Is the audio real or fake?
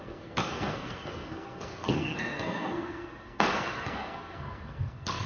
fake